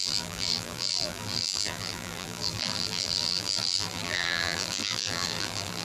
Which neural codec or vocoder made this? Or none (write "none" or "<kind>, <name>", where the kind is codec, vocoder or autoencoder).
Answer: vocoder, BigVGAN v2